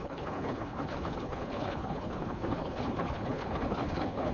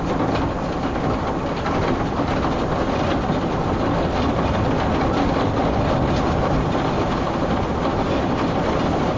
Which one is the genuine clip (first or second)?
second